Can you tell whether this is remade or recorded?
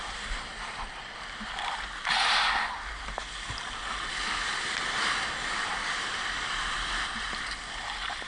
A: recorded